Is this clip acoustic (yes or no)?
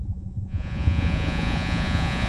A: no